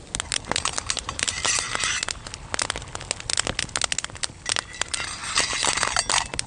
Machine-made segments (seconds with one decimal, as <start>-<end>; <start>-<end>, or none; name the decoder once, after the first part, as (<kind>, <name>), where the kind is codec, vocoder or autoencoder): none